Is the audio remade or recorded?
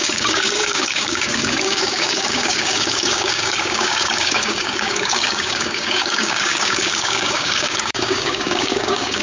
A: remade